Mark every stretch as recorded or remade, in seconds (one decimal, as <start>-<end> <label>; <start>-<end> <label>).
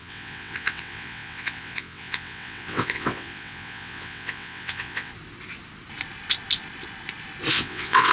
0.0-5.1 remade; 5.1-7.5 recorded; 7.5-8.1 remade